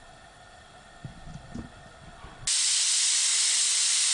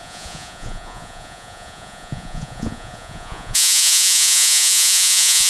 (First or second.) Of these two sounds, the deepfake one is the second